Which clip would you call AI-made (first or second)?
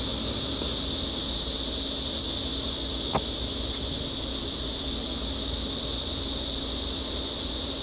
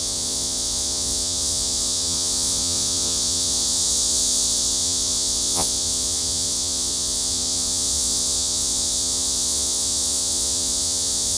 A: second